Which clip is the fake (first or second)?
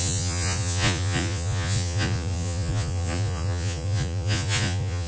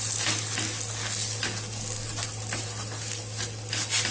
first